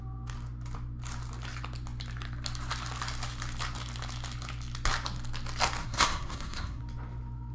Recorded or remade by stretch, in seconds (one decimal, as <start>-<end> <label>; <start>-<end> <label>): 0.0-5.8 recorded; 5.8-6.8 remade; 6.8-7.5 recorded